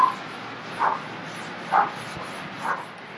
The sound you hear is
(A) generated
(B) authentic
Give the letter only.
B